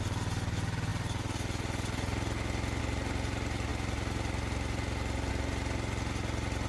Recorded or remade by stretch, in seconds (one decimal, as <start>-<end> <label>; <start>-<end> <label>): 0.0-6.7 recorded

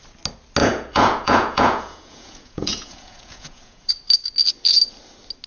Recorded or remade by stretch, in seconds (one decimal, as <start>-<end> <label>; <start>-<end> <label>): 0.0-0.6 recorded; 0.6-3.9 remade; 3.9-5.5 recorded

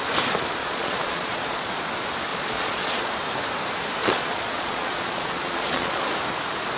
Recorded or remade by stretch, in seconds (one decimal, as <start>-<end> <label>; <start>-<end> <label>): 0.0-0.6 recorded; 0.6-1.7 remade; 1.7-2.3 recorded; 2.3-3.1 remade; 3.1-4.0 recorded; 4.0-6.1 remade; 6.1-6.8 recorded